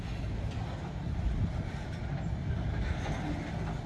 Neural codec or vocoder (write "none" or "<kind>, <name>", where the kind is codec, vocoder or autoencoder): none